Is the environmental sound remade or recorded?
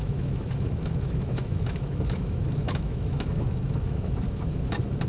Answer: remade